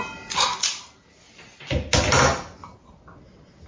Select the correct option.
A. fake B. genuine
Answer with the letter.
B